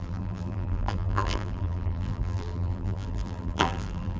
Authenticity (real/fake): fake